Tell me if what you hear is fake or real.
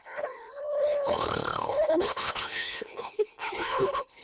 fake